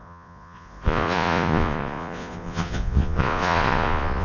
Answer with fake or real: fake